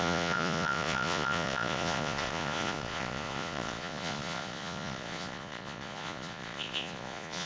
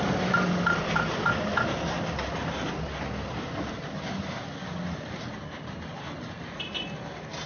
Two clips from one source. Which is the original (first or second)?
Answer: second